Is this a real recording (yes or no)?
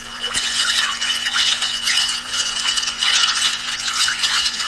no